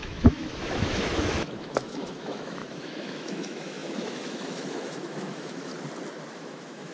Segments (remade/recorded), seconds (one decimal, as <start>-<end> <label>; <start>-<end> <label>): 0.0-5.7 remade; 5.7-6.3 recorded; 6.3-6.9 remade